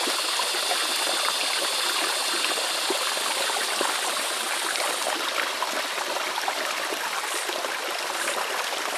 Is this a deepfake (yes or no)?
no